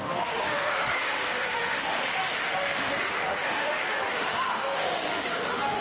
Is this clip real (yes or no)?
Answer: no